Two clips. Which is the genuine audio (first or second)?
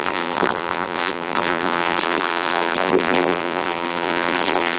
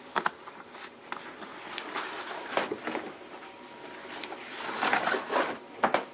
second